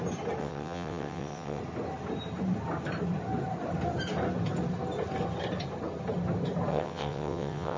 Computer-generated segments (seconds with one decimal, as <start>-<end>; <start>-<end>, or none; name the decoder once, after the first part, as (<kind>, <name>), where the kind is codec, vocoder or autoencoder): 0.4-1.6 (vocoder, WaveNeXt); 6.7-7.8